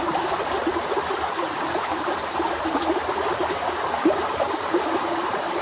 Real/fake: real